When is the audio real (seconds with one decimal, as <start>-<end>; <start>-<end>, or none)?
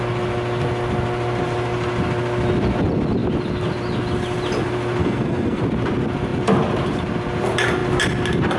0.0-5.0; 5.6-8.6